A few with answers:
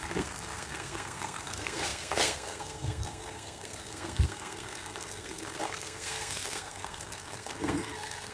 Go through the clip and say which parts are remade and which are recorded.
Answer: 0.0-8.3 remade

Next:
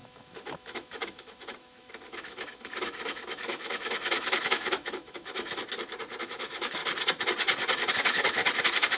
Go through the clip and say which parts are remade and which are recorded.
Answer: 0.0-5.6 remade; 5.6-6.2 recorded; 6.2-6.8 remade; 6.8-7.9 recorded; 7.9-8.4 remade; 8.4-9.0 recorded

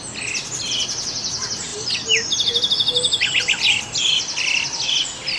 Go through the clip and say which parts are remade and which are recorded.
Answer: 0.0-5.4 recorded

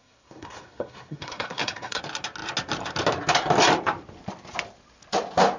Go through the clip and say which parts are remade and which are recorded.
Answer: 0.0-2.0 remade; 2.0-5.6 recorded